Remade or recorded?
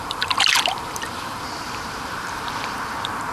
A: remade